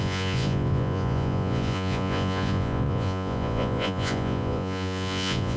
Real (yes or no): no